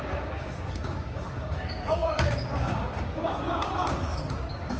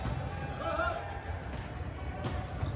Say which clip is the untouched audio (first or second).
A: second